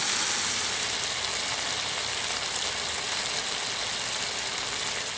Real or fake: real